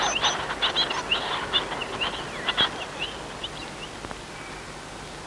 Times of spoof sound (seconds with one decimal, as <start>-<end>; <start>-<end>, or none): none